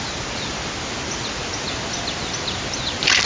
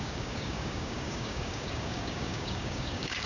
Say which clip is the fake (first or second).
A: second